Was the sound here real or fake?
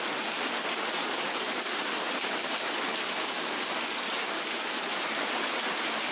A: real